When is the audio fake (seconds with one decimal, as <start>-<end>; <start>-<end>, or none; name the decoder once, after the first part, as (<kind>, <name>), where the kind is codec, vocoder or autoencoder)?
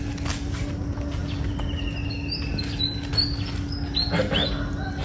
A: none